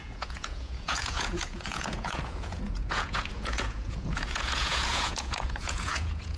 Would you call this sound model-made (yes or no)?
yes